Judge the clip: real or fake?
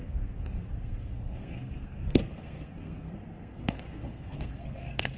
fake